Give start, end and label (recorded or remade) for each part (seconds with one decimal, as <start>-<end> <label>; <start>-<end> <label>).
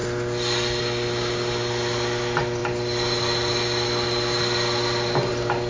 0.0-5.7 recorded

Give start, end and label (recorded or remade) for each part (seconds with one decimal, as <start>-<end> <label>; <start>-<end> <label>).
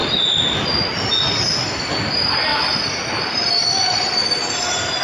0.0-5.0 recorded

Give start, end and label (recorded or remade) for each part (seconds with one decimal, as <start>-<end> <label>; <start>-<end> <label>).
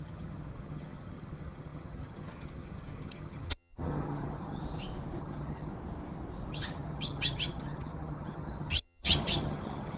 0.0-4.6 remade; 4.6-5.2 recorded; 5.2-5.7 remade; 5.7-6.5 recorded; 6.5-10.0 remade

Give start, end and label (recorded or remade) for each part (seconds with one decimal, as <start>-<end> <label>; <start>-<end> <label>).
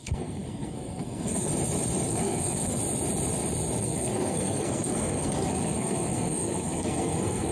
0.0-1.5 remade; 1.5-2.1 recorded; 2.1-2.8 remade; 2.8-3.8 recorded; 3.8-7.5 remade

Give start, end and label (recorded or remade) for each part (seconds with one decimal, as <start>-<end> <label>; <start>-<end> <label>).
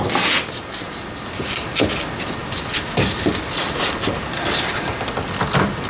0.0-5.9 recorded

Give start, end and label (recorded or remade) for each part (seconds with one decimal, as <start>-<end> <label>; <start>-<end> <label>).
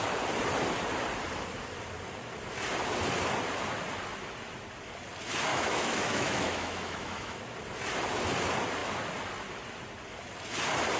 0.0-5.5 recorded; 5.5-7.4 remade; 7.4-11.0 recorded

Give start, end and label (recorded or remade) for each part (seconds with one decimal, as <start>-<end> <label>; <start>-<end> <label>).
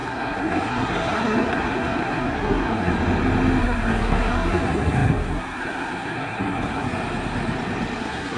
0.0-2.9 remade; 2.9-3.6 recorded; 3.6-6.9 remade; 6.9-8.0 recorded; 8.0-8.4 remade